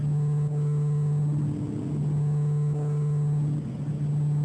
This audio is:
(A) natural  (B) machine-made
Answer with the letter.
A